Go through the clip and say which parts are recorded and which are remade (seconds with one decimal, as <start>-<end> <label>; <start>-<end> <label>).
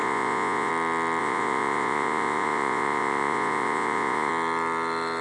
0.0-0.7 remade; 0.7-1.2 recorded; 1.2-4.3 remade; 4.3-5.2 recorded